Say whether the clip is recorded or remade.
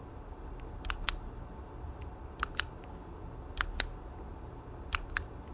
recorded